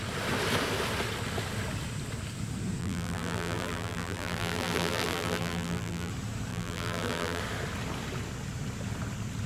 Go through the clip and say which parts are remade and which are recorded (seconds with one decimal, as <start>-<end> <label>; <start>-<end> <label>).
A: 0.0-2.8 recorded; 2.8-6.1 remade; 6.1-6.5 recorded; 6.5-7.4 remade; 7.4-9.5 recorded

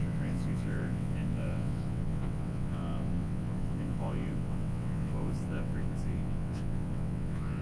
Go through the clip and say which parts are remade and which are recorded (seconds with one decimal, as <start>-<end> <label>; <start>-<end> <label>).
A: 0.0-7.6 remade